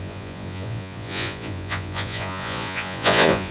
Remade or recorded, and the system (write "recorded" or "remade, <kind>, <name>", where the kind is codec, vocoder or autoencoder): remade, vocoder, Vocos